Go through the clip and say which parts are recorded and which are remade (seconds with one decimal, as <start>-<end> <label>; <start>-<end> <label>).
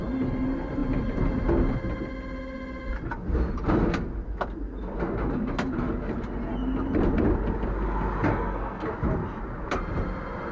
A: 0.0-8.3 recorded; 8.3-8.9 remade; 8.9-10.5 recorded